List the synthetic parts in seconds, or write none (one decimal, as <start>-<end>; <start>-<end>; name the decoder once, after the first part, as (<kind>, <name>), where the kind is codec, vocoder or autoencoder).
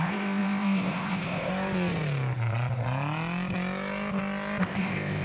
0.0-1.5 (codec, ZipCodec); 4.6-5.2